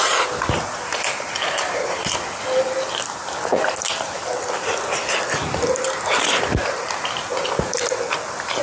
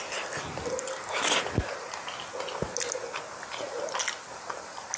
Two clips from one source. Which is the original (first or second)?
second